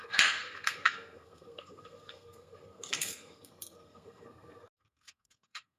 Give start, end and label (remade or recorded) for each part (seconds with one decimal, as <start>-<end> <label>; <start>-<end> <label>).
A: 0.0-5.8 remade